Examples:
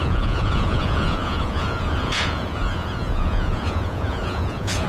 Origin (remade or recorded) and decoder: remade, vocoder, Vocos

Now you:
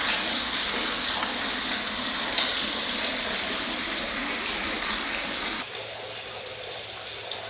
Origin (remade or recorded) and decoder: recorded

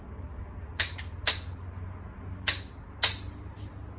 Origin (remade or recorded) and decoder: recorded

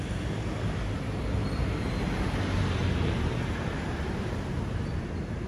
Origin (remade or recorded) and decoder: remade, vocoder, BigVGAN v2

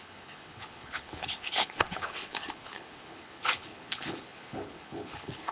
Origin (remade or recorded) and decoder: remade, codec, HILCodec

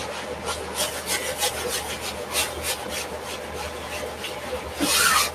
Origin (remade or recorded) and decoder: recorded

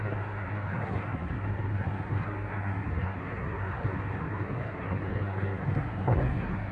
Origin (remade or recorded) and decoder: remade, codec, SNAC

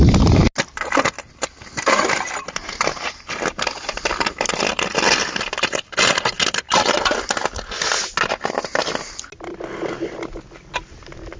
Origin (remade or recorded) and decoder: recorded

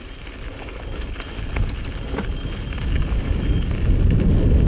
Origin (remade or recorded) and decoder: recorded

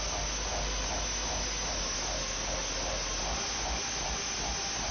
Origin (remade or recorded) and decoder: recorded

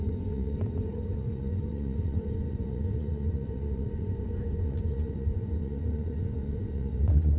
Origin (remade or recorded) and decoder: remade, vocoder, Vocos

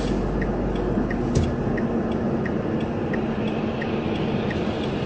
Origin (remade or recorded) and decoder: recorded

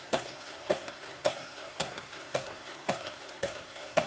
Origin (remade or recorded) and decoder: remade, codec, SNAC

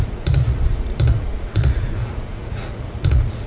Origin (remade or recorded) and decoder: remade, vocoder, Vocos